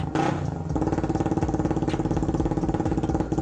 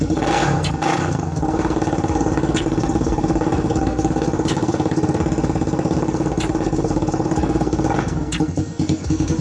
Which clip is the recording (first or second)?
first